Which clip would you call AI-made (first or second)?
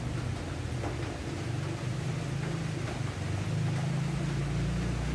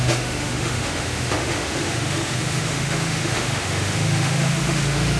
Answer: second